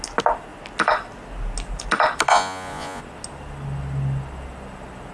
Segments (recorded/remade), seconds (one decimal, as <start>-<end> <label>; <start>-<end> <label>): 0.0-2.3 recorded; 2.3-3.0 remade; 3.0-5.1 recorded